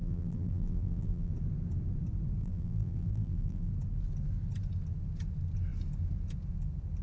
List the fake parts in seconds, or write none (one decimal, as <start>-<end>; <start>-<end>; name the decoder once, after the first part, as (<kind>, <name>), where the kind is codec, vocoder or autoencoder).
0.0-1.3 (vocoder, BigVGAN v2); 2.4-3.7